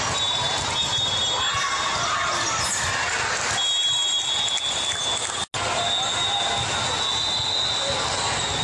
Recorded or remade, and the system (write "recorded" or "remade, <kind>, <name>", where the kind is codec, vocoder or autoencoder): recorded